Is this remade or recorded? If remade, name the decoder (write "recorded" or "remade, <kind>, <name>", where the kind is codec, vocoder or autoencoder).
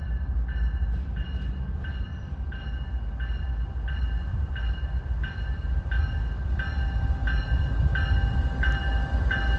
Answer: recorded